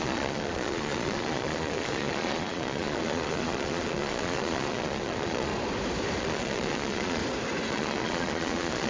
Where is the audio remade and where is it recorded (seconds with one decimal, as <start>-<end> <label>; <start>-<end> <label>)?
0.0-5.5 remade; 5.5-6.2 recorded; 6.2-7.2 remade; 7.2-7.7 recorded; 7.7-8.9 remade